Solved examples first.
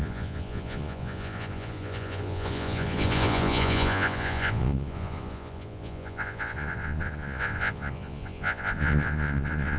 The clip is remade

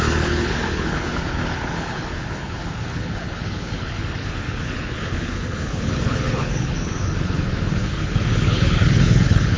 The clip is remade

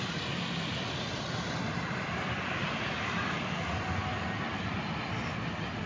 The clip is remade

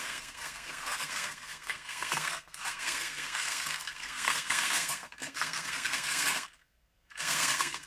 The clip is remade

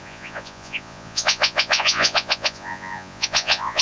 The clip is remade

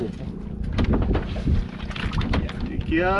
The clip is recorded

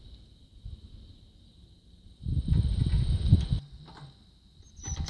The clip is recorded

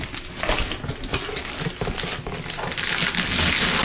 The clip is recorded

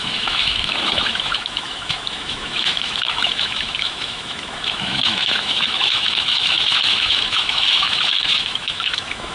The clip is remade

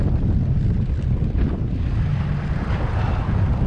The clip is recorded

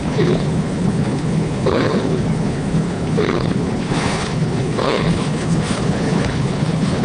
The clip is remade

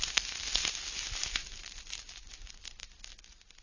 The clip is recorded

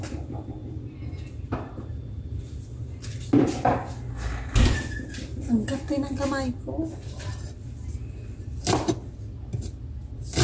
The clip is recorded